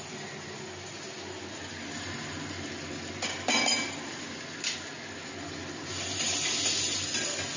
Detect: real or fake real